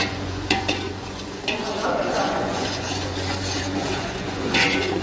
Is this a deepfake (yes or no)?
yes